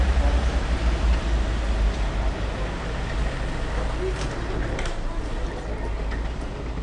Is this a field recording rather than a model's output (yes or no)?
yes